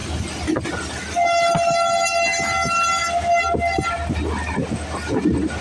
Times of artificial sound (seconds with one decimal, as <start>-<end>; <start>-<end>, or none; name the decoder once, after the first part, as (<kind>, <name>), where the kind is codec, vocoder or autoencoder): none